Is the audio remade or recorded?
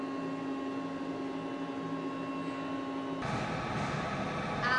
recorded